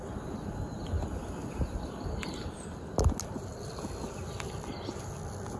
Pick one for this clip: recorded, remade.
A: recorded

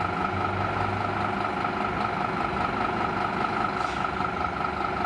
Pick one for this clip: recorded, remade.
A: recorded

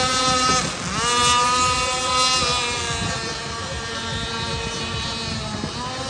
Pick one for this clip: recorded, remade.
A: recorded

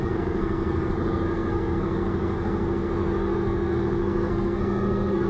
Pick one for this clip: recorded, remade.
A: remade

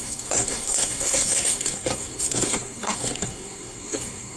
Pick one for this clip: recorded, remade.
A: remade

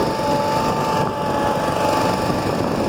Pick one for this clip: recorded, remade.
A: recorded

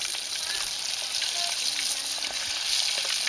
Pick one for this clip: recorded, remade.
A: recorded